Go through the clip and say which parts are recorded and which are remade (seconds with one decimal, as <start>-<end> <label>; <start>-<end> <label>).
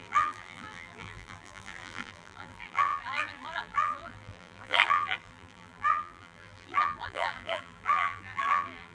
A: 0.0-8.9 remade